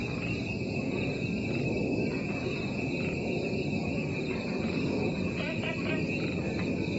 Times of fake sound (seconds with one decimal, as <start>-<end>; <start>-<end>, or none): 0.5-1.2; 2.1-5.6